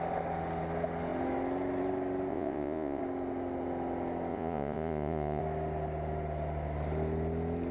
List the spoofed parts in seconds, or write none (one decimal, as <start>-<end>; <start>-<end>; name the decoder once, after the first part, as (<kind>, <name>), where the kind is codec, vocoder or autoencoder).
2.3-3.0 (vocoder, Vocos); 4.3-5.4